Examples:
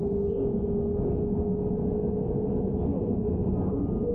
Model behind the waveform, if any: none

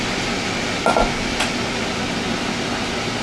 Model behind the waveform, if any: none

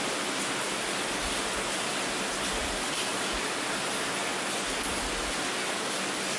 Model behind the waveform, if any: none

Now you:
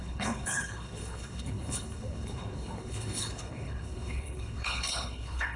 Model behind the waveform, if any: codec, HILCodec